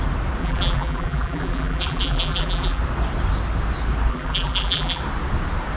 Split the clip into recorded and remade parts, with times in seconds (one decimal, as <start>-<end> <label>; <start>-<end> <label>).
0.0-0.4 recorded; 0.4-2.8 remade; 2.8-4.1 recorded; 4.1-5.0 remade; 5.0-5.8 recorded